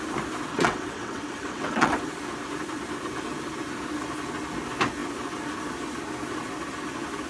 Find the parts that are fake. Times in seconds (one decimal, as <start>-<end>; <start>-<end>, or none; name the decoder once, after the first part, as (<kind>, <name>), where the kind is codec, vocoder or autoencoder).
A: 0.5-2.0 (vocoder, WaveNeXt)

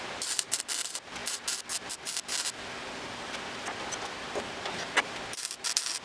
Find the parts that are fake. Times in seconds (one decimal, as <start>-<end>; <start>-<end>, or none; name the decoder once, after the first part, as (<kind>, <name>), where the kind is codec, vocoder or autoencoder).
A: none